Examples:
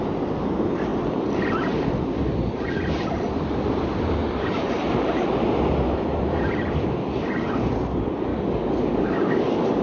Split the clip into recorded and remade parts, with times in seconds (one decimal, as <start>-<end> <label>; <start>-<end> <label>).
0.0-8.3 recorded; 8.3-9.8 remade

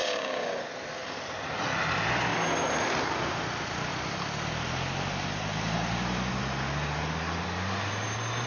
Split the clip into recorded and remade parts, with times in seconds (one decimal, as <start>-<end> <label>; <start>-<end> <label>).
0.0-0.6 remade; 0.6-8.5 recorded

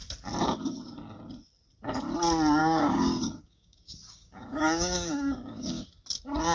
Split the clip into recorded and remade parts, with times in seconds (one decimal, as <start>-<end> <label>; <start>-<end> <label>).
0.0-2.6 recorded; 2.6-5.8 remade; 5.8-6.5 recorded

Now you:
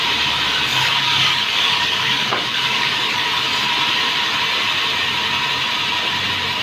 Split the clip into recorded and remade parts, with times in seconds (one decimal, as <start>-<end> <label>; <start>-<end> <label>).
0.0-0.7 recorded; 0.7-3.2 remade; 3.2-6.6 recorded